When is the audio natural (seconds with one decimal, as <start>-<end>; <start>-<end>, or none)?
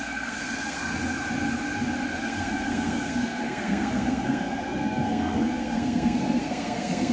0.9-2.2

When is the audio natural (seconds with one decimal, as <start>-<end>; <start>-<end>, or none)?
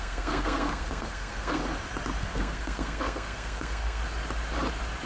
1.6-2.2; 4.0-5.1